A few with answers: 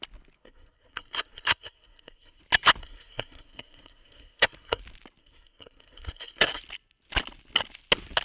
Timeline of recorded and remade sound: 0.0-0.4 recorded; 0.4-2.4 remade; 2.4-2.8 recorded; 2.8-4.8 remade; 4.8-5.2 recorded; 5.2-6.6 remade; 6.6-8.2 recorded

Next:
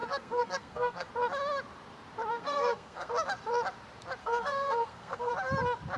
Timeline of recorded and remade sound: 0.0-1.1 remade; 1.1-2.3 recorded; 2.3-3.1 remade; 3.1-4.2 recorded; 4.2-5.3 remade; 5.3-6.0 recorded

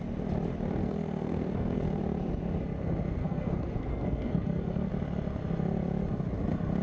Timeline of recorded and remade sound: 0.0-0.8 recorded; 0.8-2.0 remade; 2.0-3.2 recorded; 3.2-4.9 remade; 4.9-6.8 recorded

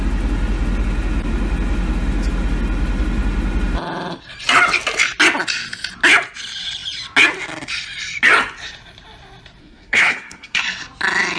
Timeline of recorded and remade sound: 0.0-9.6 recorded; 9.6-10.6 remade; 10.6-11.4 recorded

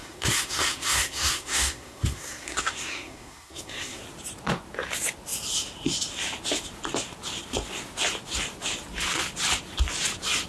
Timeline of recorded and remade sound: 0.0-4.0 remade; 4.0-10.5 recorded

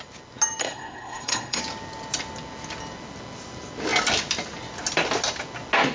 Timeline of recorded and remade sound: 0.0-0.6 recorded; 0.6-1.6 remade; 1.6-5.9 recorded

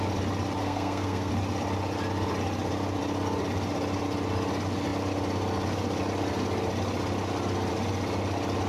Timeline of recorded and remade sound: 0.0-0.6 recorded; 0.6-1.3 remade; 1.3-8.7 recorded